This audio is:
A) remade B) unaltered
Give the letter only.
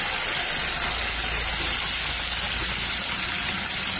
B